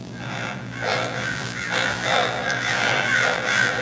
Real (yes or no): no